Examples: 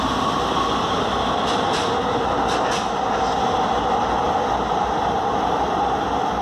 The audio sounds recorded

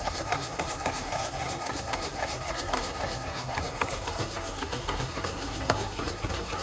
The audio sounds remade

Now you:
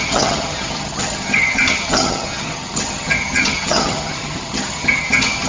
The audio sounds remade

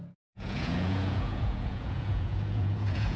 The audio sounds remade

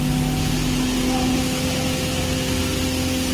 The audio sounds recorded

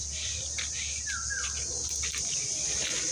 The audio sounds recorded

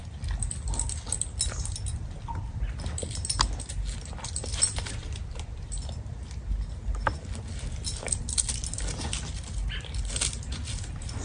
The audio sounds recorded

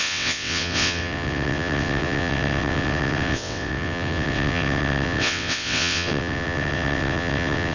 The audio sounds remade